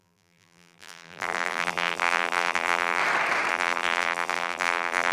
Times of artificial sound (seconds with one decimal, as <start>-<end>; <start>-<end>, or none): 0.0-3.0; 3.5-5.1